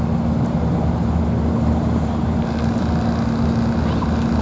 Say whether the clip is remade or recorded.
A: recorded